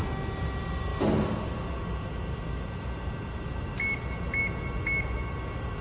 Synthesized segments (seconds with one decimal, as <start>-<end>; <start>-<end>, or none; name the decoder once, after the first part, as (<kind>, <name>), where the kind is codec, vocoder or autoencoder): none